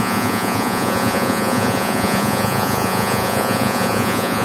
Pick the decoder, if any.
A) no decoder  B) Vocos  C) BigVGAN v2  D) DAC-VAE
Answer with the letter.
B